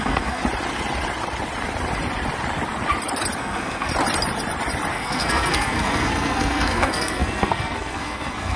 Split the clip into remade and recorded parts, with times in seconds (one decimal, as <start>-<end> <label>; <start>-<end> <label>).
0.0-0.4 remade; 0.4-3.4 recorded; 3.4-3.9 remade; 3.9-4.9 recorded; 4.9-8.6 remade